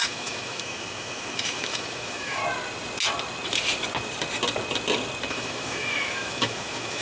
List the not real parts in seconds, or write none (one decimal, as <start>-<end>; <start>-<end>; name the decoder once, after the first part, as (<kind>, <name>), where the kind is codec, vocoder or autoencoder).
0.0-2.4 (autoencoder, DAC-VAE); 5.3-7.0